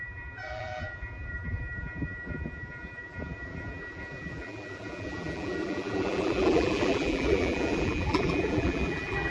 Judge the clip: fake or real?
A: fake